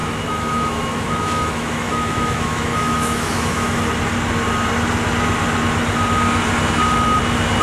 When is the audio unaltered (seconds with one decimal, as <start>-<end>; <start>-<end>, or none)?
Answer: 3.9-7.6